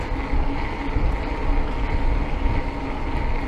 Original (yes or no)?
yes